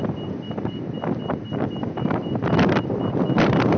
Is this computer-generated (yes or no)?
yes